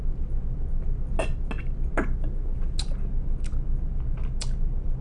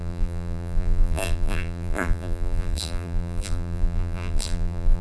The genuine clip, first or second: first